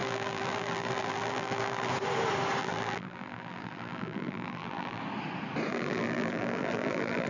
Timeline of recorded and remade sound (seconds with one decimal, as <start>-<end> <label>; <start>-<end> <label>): 0.0-1.9 remade; 1.9-2.6 recorded; 2.6-5.0 remade; 5.0-5.7 recorded; 5.7-7.3 remade